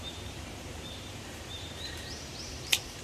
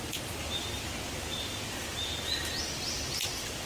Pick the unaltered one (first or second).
second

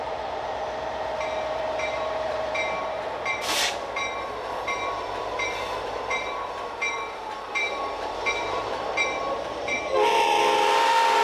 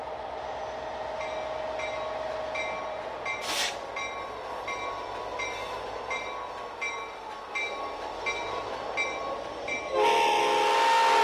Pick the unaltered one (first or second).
second